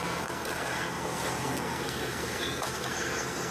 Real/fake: fake